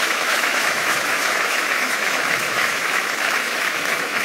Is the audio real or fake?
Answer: fake